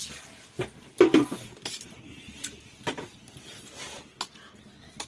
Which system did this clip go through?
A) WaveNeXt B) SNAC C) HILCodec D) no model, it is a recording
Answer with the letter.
D